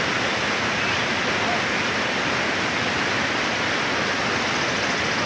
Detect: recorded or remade recorded